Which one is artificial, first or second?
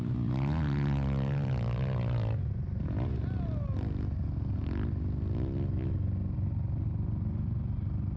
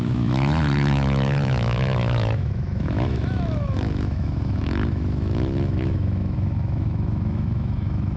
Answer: second